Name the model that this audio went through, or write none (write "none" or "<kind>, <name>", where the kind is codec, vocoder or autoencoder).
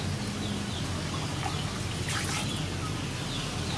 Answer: none